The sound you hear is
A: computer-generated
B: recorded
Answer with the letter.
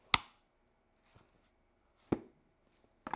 B